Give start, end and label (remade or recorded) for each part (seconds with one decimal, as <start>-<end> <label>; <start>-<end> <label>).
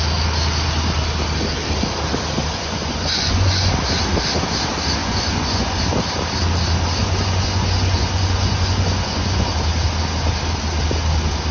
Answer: 0.0-2.5 recorded; 2.5-3.7 remade; 3.7-5.0 recorded; 5.0-5.8 remade; 5.8-7.0 recorded; 7.0-9.5 remade; 9.5-11.5 recorded